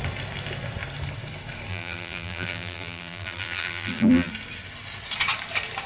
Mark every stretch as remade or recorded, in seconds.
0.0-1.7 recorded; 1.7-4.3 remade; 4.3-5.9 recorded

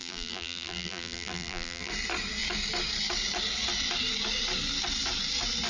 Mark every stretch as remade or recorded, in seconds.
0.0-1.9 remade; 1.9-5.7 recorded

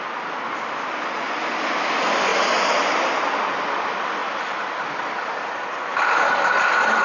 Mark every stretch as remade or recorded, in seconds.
0.0-7.0 recorded